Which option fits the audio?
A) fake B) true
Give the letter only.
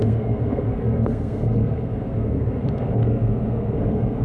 A